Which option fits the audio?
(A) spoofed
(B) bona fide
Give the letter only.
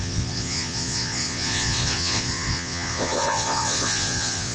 A